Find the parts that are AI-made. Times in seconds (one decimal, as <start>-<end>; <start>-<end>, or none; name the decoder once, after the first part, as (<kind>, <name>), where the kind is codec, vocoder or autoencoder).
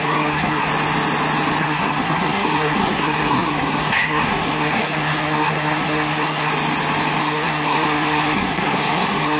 0.0-0.7 (codec, SNAC); 1.6-6.5; 7.2-9.4